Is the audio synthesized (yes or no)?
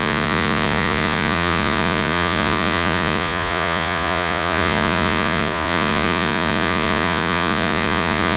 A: yes